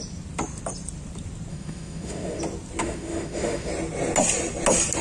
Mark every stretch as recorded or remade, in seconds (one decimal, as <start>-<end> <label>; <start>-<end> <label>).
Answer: 0.0-1.5 recorded; 1.5-2.4 remade; 2.4-2.8 recorded; 2.8-3.7 remade; 3.7-5.0 recorded